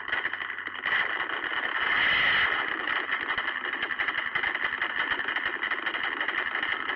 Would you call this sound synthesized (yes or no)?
no